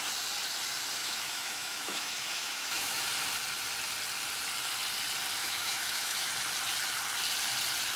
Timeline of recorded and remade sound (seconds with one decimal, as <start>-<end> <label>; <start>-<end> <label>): 0.0-1.0 recorded; 1.0-3.0 remade; 3.0-5.4 recorded; 5.4-6.3 remade; 6.3-8.0 recorded